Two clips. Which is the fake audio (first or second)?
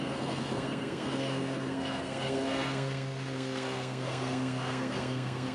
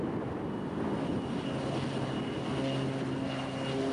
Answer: first